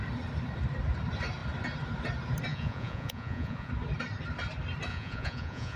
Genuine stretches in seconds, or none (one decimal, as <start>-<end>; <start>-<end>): 0.0-2.5; 3.7-4.9